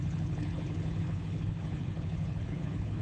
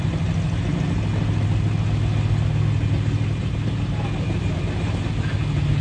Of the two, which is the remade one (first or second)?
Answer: first